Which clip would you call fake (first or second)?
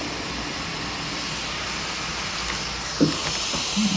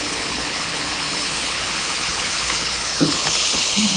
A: second